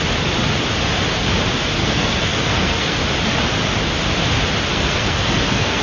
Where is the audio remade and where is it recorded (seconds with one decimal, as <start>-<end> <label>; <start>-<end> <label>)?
0.0-1.8 recorded; 1.8-3.0 remade; 3.0-4.7 recorded; 4.7-5.8 remade